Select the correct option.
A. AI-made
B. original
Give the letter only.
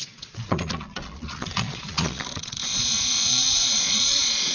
A